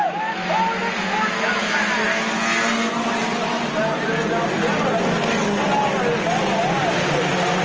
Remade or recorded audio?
recorded